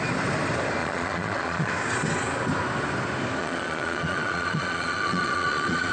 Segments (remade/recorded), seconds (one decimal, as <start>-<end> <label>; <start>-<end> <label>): 0.0-0.8 recorded; 0.8-1.7 remade; 1.7-3.4 recorded; 3.4-5.9 remade

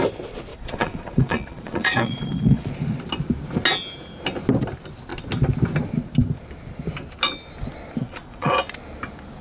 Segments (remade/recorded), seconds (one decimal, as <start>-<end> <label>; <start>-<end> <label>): 0.0-0.5 recorded; 0.5-2.7 remade; 2.7-8.0 recorded; 8.0-8.5 remade; 8.5-9.4 recorded

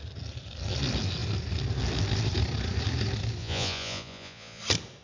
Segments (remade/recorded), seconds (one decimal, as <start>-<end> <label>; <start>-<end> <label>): 0.0-3.4 recorded; 3.4-4.6 remade; 4.6-5.0 recorded

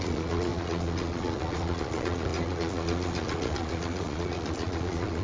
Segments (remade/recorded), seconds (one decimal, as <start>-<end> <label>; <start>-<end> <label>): 0.0-5.2 remade

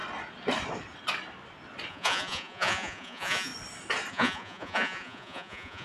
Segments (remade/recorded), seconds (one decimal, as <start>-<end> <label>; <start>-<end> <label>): 0.0-1.9 recorded; 1.9-3.5 remade; 3.5-4.1 recorded; 4.1-5.8 remade

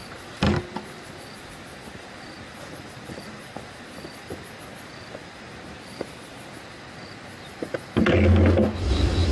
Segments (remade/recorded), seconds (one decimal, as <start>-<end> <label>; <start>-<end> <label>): 0.0-9.3 recorded

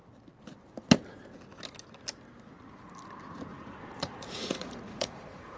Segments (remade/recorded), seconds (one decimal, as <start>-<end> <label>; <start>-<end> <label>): 0.0-3.5 recorded; 3.5-5.6 remade